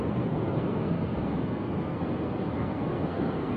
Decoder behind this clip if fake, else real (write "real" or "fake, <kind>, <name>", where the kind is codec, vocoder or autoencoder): fake, codec, SNAC